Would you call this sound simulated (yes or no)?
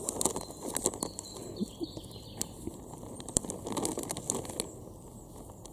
no